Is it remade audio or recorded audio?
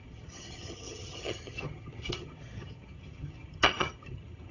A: remade